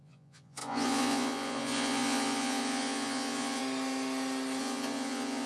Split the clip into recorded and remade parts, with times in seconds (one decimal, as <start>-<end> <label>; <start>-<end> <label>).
0.0-3.6 remade; 3.6-4.6 recorded; 4.6-5.5 remade